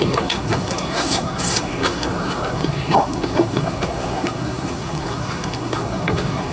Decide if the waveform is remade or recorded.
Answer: remade